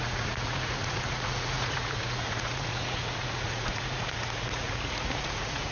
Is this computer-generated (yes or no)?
yes